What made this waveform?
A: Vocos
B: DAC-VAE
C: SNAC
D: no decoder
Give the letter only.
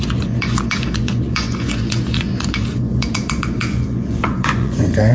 A